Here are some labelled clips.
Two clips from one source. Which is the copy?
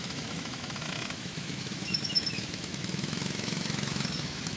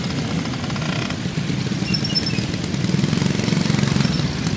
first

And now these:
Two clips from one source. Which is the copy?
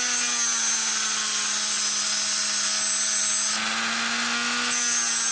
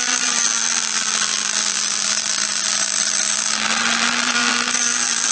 second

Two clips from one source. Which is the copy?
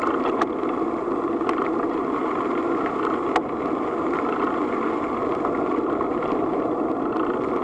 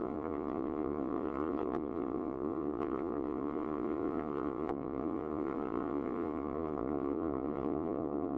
second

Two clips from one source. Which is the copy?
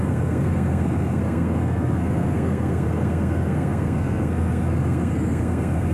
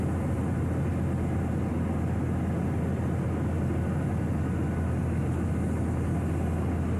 first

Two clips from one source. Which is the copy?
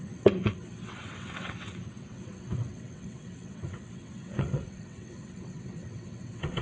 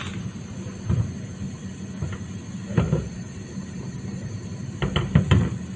first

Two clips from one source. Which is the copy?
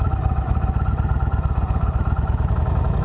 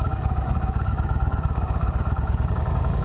second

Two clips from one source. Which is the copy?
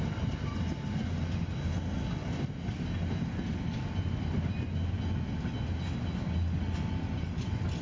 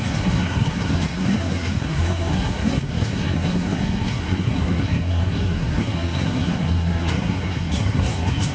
second